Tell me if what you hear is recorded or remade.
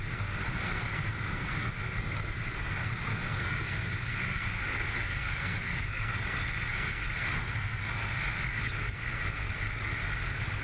remade